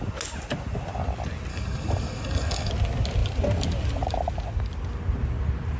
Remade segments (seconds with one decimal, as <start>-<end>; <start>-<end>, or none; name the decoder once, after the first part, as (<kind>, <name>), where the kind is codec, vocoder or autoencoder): 1.5-2.7 (codec, DAC)